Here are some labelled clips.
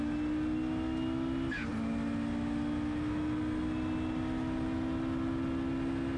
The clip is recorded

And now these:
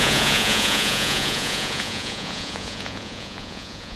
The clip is remade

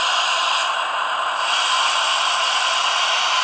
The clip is recorded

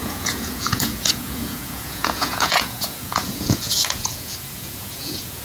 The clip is remade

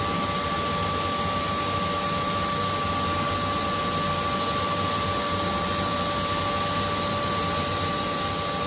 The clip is recorded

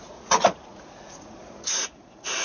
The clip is remade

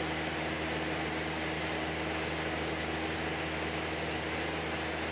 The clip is recorded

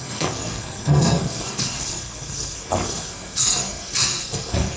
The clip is remade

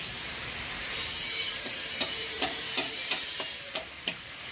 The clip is remade